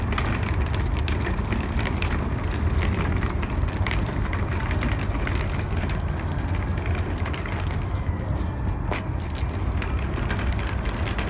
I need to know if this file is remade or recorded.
recorded